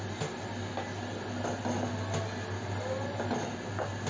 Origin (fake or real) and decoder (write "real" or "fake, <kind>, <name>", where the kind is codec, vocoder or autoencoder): real